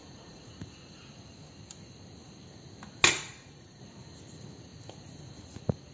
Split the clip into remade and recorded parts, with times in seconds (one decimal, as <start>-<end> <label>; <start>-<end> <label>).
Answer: 0.0-1.0 remade; 1.0-3.2 recorded; 3.2-3.8 remade; 3.8-5.9 recorded

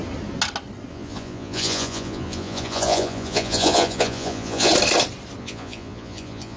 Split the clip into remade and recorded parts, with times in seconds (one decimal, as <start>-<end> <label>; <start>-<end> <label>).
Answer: 0.0-0.9 recorded; 0.9-4.7 remade; 4.7-5.4 recorded; 5.4-6.6 remade

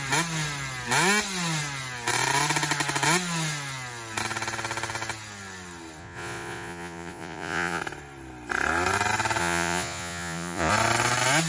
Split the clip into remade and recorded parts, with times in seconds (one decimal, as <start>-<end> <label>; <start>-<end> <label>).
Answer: 0.0-6.0 recorded; 6.0-7.8 remade; 7.8-9.4 recorded; 9.4-10.7 remade; 10.7-11.5 recorded

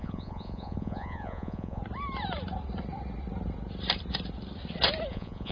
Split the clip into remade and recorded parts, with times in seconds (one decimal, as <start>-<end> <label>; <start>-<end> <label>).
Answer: 0.0-1.8 remade; 1.8-5.1 recorded; 5.1-5.5 remade

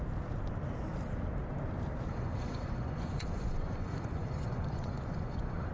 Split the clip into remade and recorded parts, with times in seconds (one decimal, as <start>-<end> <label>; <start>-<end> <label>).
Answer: 0.0-2.1 recorded; 2.1-5.7 remade

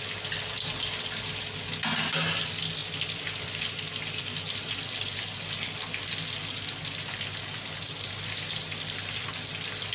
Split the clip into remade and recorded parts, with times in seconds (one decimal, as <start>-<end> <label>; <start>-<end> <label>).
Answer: 0.0-9.9 recorded

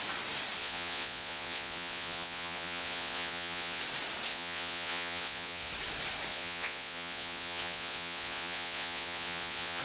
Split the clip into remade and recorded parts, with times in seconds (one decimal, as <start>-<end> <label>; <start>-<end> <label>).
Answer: 0.0-0.6 recorded; 0.6-3.8 remade; 3.8-4.3 recorded; 4.3-5.7 remade; 5.7-6.3 recorded; 6.3-9.8 remade